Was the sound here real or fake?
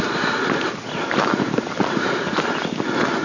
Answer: real